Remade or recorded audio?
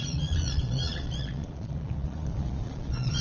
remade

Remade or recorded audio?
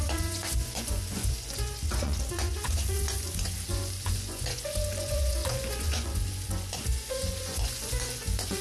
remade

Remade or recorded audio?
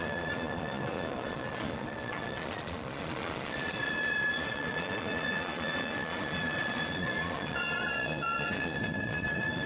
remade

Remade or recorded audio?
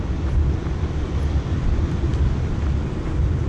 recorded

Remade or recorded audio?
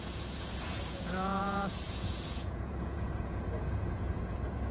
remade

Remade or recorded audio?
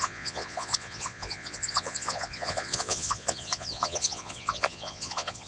remade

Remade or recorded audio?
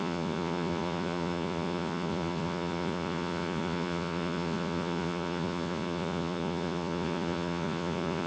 remade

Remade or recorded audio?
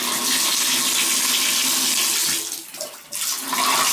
recorded